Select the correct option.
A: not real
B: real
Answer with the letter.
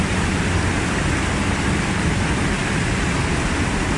B